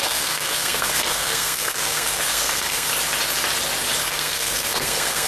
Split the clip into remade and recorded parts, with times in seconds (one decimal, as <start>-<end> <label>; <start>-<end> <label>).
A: 0.0-2.9 remade; 2.9-4.0 recorded; 4.0-5.3 remade